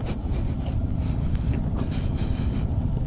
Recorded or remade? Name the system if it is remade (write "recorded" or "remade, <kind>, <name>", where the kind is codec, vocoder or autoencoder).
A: recorded